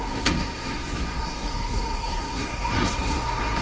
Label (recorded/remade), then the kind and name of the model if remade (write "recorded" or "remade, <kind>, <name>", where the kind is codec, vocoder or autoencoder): remade, codec, SNAC